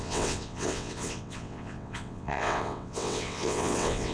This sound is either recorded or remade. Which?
remade